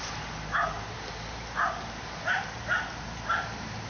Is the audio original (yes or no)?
yes